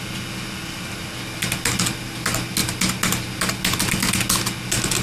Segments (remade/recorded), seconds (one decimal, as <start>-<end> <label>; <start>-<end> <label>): 0.0-5.0 recorded

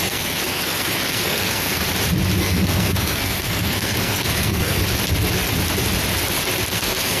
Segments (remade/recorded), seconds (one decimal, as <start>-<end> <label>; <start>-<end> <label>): 0.0-1.8 remade; 1.8-2.4 recorded; 2.4-4.8 remade; 4.8-6.7 recorded; 6.7-7.2 remade

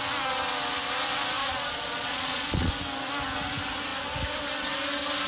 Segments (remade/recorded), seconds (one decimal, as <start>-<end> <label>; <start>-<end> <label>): 0.0-1.4 recorded; 1.4-2.7 remade; 2.7-5.3 recorded